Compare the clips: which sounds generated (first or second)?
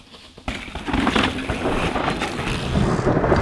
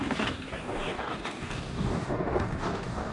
second